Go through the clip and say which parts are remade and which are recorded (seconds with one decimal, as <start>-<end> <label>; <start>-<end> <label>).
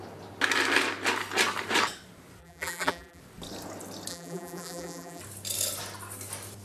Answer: 0.0-2.4 recorded; 2.4-3.2 remade; 3.2-4.1 recorded; 4.1-5.2 remade; 5.2-6.6 recorded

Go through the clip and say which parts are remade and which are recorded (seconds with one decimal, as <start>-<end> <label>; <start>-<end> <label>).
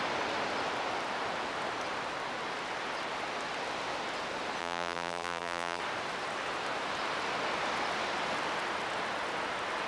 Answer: 0.0-4.6 recorded; 4.6-5.8 remade; 5.8-9.9 recorded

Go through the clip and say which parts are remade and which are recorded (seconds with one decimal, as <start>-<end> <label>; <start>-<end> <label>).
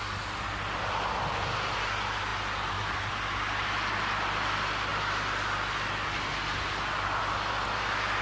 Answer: 0.0-8.2 recorded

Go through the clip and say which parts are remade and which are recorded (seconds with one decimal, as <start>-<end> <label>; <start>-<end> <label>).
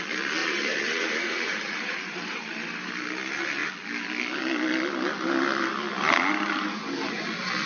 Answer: 0.0-0.4 recorded; 0.4-2.9 remade; 2.9-7.7 recorded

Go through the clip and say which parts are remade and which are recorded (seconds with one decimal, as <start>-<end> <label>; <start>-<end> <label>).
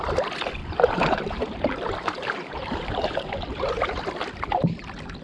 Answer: 0.0-0.6 recorded; 0.6-3.7 remade; 3.7-5.2 recorded